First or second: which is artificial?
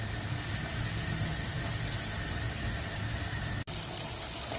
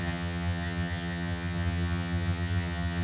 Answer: second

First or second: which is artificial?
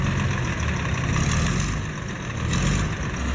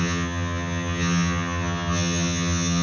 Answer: second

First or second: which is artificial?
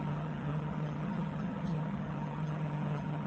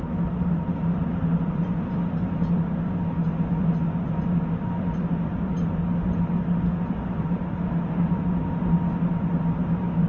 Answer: first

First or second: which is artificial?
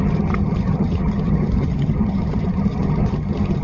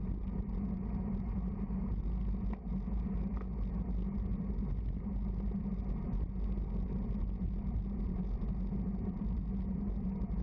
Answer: first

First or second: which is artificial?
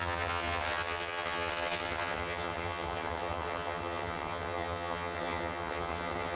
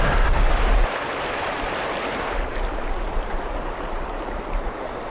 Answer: first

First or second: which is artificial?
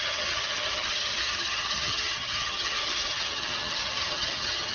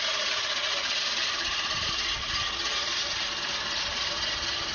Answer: first